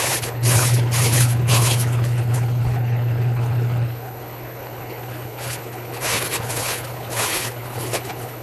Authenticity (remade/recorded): remade